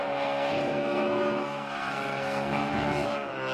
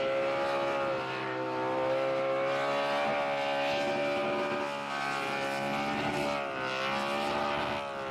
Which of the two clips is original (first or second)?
second